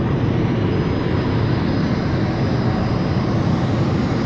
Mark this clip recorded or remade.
recorded